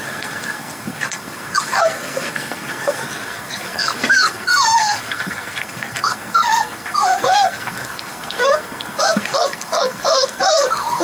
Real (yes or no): no